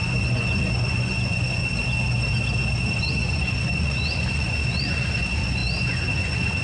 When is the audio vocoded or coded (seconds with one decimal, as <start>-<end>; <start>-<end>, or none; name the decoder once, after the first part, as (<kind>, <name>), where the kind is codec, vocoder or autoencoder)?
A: 0.0-1.6 (vocoder, Vocos); 3.0-6.6